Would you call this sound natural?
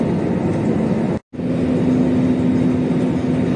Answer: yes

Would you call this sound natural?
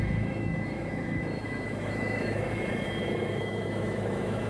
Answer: no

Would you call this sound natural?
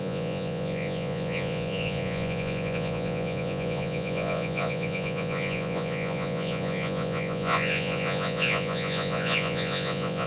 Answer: no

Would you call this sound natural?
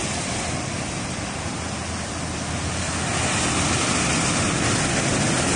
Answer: yes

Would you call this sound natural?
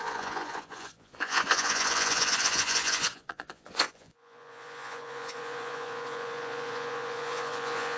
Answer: no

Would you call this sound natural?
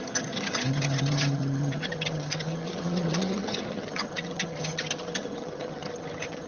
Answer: no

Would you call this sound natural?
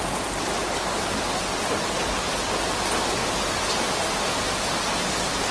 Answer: yes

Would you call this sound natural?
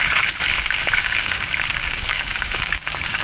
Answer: no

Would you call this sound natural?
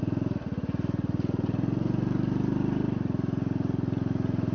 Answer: yes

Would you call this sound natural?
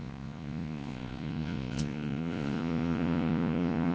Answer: no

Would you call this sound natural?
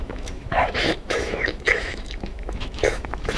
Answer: no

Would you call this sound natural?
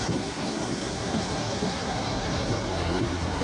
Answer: no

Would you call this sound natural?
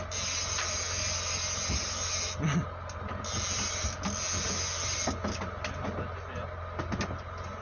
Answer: yes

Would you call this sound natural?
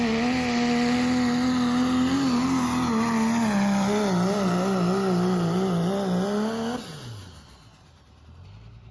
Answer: yes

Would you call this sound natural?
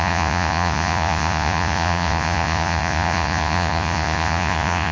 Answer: no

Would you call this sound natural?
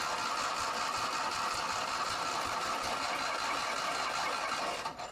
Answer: yes